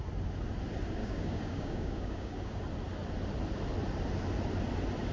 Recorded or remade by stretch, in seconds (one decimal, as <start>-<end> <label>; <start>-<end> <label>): 0.0-1.0 recorded; 1.0-2.6 remade; 2.6-5.1 recorded